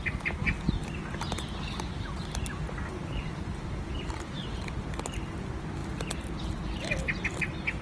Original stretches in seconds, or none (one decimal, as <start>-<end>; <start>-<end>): 0.0-7.8